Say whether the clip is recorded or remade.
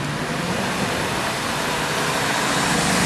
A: recorded